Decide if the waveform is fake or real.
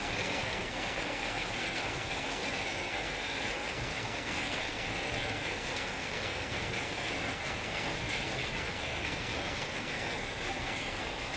fake